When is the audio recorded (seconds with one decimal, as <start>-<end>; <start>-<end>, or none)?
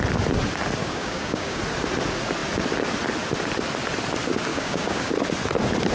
0.0-0.8; 1.6-4.5; 5.1-5.9